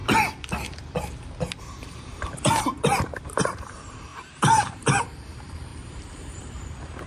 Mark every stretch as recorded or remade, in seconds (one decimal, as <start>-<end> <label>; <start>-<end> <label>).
0.0-1.6 recorded; 1.6-7.1 remade